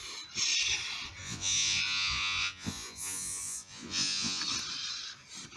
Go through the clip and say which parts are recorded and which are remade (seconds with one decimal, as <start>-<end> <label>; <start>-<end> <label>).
0.0-1.2 recorded; 1.2-4.4 remade; 4.4-5.6 recorded